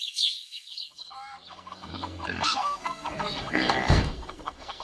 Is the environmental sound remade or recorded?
remade